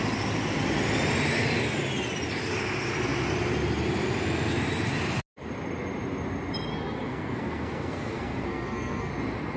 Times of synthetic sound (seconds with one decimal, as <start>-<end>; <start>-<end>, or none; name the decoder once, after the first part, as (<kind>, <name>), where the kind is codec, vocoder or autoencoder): 6.7-9.1 (codec, SNAC)